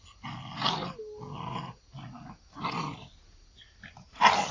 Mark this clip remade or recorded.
recorded